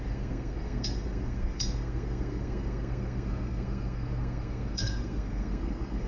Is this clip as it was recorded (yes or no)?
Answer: no